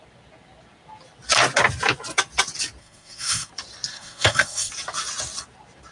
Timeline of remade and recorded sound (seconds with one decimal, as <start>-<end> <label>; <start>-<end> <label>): 0.0-2.8 recorded; 2.8-3.5 remade; 3.5-3.9 recorded; 3.9-4.7 remade; 4.7-5.9 recorded

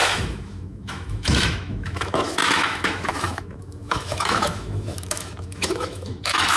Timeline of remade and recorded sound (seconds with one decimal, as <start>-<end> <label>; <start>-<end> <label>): 0.0-6.6 remade

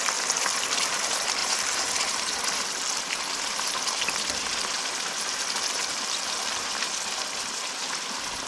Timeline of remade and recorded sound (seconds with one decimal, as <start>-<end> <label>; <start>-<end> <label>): 0.0-1.4 recorded; 1.4-1.9 remade; 1.9-8.5 recorded

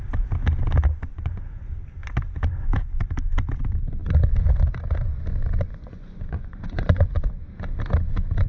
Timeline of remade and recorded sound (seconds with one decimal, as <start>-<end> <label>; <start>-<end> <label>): 0.0-1.1 recorded; 1.1-1.7 remade; 1.7-5.7 recorded; 5.7-7.4 remade; 7.4-8.5 recorded

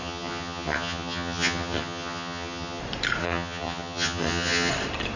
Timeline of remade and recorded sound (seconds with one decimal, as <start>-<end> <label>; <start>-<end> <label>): 0.0-2.8 remade; 2.8-3.2 recorded; 3.2-4.7 remade; 4.7-5.2 recorded

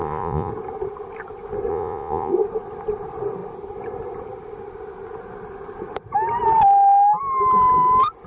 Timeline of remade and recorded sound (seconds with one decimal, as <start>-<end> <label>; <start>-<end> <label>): 0.0-0.5 remade; 0.5-1.7 recorded; 1.7-2.3 remade; 2.3-8.3 recorded

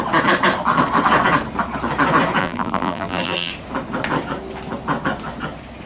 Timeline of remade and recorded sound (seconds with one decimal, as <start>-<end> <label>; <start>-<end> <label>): 0.0-2.4 recorded; 2.4-3.5 remade; 3.5-5.9 recorded